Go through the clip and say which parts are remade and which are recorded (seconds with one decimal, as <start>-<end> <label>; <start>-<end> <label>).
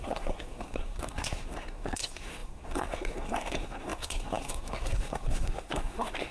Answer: 0.0-6.3 remade